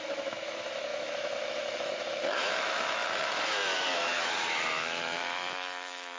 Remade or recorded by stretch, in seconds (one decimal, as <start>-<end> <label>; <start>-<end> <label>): 0.0-6.2 remade